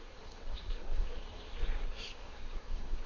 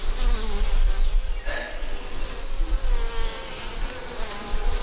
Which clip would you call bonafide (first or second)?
second